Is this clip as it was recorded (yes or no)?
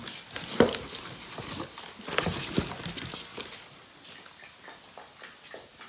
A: yes